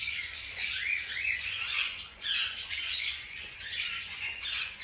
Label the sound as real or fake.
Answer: fake